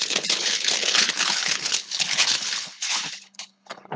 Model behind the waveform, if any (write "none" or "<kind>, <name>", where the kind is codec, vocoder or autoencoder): codec, HILCodec